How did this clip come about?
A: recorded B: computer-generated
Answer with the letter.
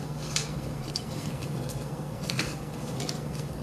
B